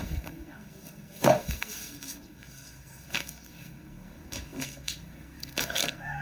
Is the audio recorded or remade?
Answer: remade